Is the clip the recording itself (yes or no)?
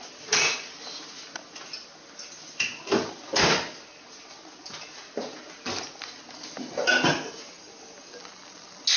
yes